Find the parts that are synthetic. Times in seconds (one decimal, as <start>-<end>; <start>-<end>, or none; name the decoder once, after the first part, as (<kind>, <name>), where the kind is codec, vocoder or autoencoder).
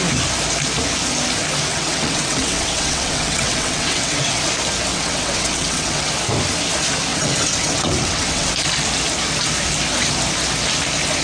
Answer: 1.7-4.4 (vocoder, WaveNeXt); 4.9-6.1; 7.1-8.5